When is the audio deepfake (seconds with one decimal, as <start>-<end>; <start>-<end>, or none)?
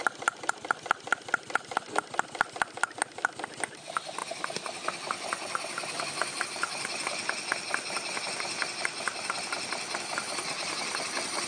none